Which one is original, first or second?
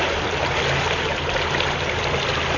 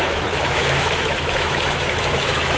first